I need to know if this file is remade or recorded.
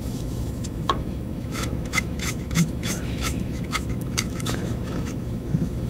remade